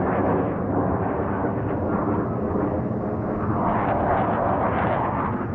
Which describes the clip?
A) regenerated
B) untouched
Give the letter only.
B